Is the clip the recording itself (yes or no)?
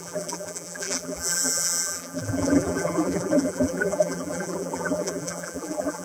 no